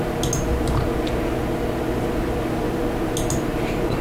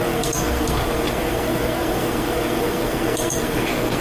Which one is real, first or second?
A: first